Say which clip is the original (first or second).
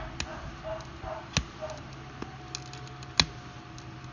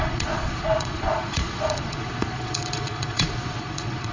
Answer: first